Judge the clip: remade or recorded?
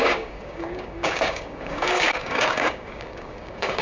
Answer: remade